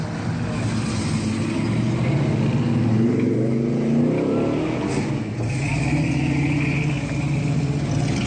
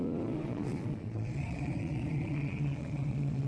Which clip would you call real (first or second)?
first